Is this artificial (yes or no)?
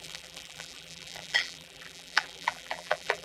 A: yes